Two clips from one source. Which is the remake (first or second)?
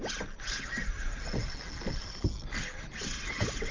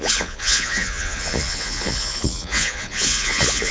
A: second